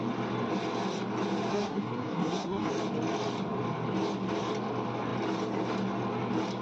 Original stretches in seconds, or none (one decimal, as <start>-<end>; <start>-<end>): 0.0-1.5; 2.7-6.6